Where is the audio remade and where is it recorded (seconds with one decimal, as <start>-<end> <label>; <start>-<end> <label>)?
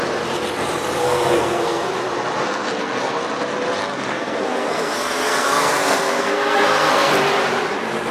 0.0-1.0 recorded; 1.0-1.9 remade; 1.9-2.4 recorded; 2.4-3.2 remade; 3.2-3.9 recorded; 3.9-7.1 remade; 7.1-8.1 recorded